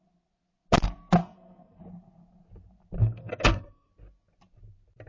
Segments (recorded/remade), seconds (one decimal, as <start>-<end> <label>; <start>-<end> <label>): 0.0-1.2 recorded; 1.2-1.8 remade; 1.8-3.0 recorded; 3.0-3.9 remade; 3.9-5.1 recorded